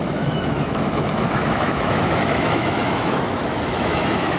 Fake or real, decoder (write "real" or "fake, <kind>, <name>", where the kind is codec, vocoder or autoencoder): fake, autoencoder, DAC-VAE